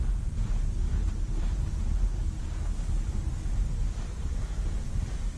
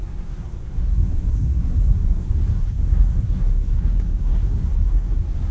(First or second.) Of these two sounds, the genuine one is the first